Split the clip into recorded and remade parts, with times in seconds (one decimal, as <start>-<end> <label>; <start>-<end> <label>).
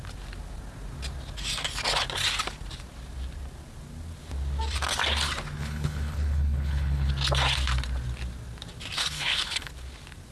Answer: 0.0-5.6 recorded; 5.6-7.1 remade; 7.1-9.0 recorded; 9.0-9.7 remade; 9.7-10.3 recorded